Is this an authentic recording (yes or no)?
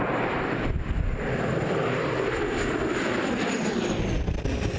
no